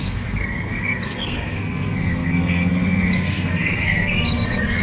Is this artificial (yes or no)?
yes